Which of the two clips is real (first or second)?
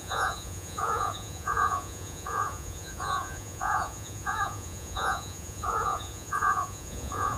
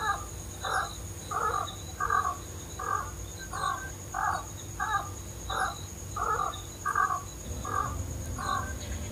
second